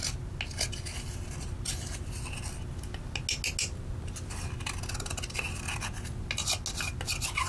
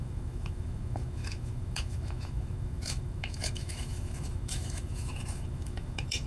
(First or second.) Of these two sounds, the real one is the first